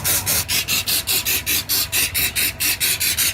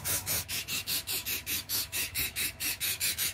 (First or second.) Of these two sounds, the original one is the first